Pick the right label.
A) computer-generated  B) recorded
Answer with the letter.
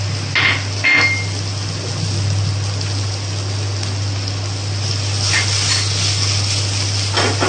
B